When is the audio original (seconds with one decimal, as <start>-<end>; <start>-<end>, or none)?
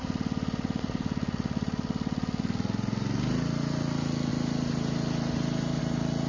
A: 0.0-4.3; 5.8-6.3